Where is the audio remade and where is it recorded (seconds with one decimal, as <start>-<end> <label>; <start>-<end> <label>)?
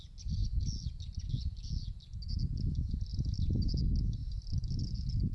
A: 0.0-3.1 recorded; 3.1-3.7 remade; 3.7-4.2 recorded; 4.2-4.7 remade; 4.7-5.3 recorded